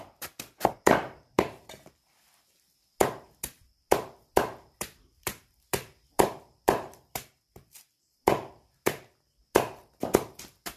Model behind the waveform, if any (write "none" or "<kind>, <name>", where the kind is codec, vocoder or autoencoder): vocoder, BigVGAN v2